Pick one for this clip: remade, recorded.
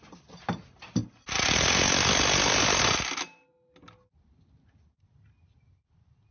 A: recorded